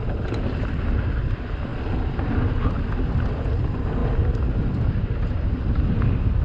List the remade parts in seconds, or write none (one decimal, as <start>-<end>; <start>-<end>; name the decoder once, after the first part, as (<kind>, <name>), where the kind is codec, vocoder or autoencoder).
none